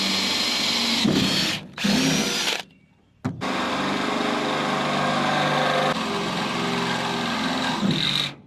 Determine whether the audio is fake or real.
real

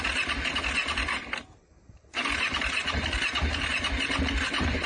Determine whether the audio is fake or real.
real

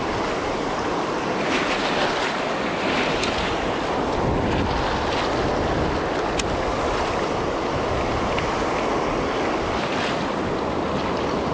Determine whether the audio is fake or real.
real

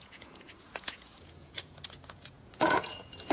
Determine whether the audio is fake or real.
fake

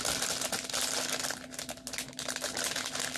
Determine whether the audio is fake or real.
real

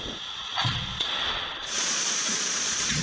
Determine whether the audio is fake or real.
fake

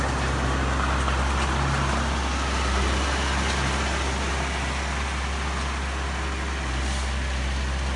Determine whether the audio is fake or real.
real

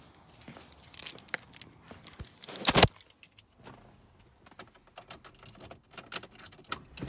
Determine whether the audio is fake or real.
real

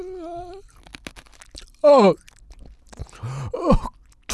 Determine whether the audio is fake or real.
real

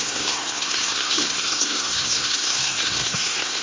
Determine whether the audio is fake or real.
fake